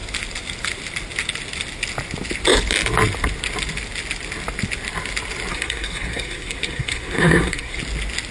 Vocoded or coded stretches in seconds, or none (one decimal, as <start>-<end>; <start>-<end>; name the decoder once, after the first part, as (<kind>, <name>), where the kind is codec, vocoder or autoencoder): 5.5-7.8 (codec, SNAC)